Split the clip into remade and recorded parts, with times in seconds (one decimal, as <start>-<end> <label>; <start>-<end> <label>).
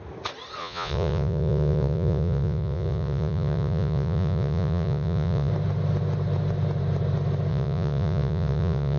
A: 0.0-0.6 recorded; 0.6-5.5 remade; 5.5-7.5 recorded; 7.5-9.0 remade